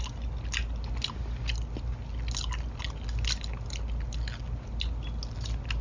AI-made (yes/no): no